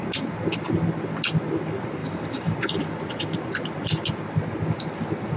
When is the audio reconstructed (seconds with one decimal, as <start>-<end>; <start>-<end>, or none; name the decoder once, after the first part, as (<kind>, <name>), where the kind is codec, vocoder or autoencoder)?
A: 2.0-2.8 (vocoder, BigVGAN v2)